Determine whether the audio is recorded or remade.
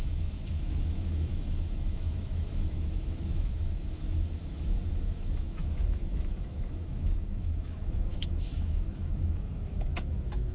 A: remade